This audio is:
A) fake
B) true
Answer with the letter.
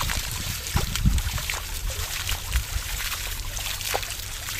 A